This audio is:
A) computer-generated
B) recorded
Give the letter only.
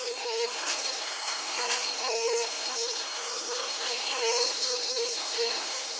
A